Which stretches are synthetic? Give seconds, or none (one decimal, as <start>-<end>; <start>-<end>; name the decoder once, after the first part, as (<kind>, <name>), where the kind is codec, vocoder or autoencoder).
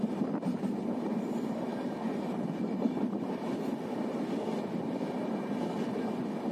none